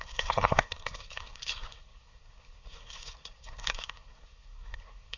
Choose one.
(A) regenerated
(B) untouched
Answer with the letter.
A